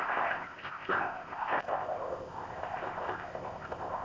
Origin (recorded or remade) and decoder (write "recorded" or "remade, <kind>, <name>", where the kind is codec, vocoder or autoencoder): remade, codec, ZipCodec